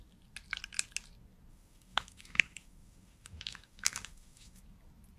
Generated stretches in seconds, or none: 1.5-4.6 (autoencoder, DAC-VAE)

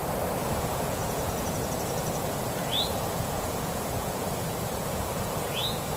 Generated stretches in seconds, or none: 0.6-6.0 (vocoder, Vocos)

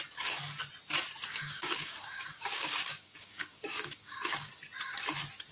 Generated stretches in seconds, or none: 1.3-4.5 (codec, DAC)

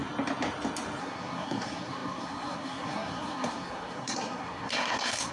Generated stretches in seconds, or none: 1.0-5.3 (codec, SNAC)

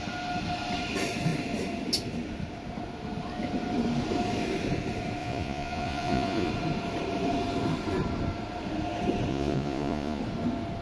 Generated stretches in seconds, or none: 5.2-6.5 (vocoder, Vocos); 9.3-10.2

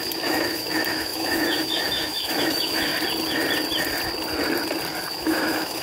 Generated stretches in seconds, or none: 0.0-2.9 (autoencoder, DAC-VAE); 5.1-5.8